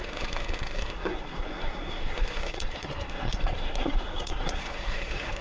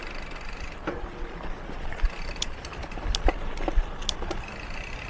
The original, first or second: second